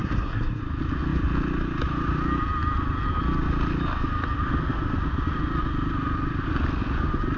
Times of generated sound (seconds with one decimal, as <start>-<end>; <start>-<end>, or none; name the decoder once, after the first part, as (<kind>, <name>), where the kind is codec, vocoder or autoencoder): 0.0-0.6 (codec, SNAC)